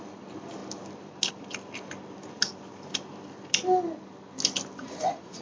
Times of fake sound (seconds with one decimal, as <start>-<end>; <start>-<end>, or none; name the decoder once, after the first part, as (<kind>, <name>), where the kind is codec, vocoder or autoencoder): 4.8-5.4 (vocoder, Vocos)